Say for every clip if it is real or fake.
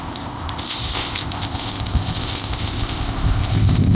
fake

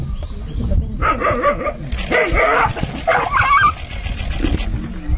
real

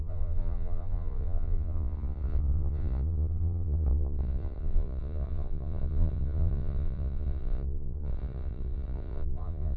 fake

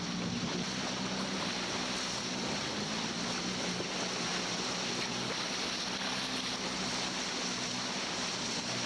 real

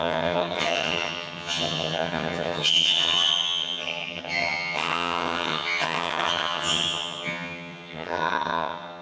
fake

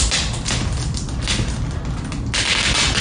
real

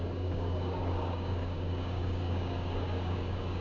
fake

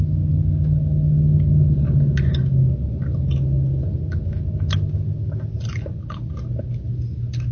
real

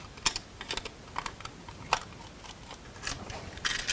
real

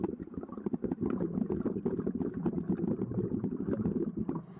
real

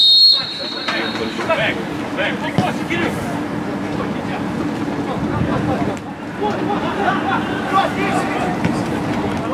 real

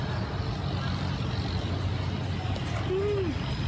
real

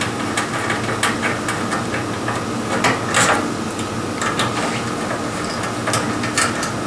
real